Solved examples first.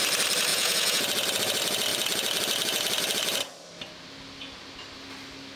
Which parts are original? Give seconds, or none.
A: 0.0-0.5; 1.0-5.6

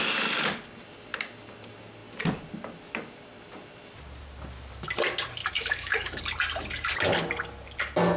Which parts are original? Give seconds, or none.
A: 0.0-5.4; 6.2-8.2